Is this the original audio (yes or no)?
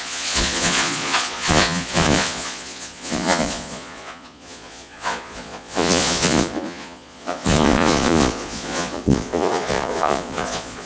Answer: no